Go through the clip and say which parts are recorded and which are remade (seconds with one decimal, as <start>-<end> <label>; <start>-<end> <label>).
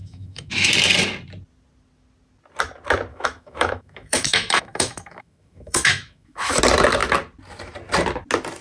0.0-0.7 remade; 0.7-3.1 recorded; 3.1-6.6 remade; 6.6-8.6 recorded